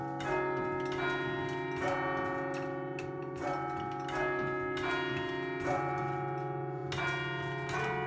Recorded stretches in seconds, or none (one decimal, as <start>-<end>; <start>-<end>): 0.0-8.1